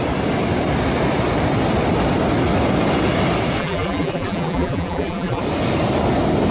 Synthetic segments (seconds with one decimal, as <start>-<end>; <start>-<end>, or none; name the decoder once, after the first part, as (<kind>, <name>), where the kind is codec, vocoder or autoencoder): 3.6-5.4 (vocoder, BigVGAN v2)